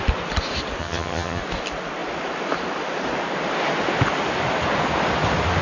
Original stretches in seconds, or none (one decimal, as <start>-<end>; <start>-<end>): 0.0-0.8; 1.4-5.6